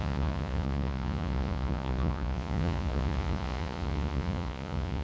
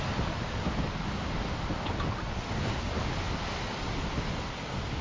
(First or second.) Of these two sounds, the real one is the second